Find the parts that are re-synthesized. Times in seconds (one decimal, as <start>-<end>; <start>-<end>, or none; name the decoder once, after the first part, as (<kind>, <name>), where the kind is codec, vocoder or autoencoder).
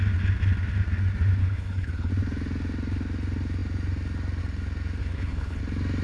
1.4-2.1 (codec, HILCodec); 5.0-5.6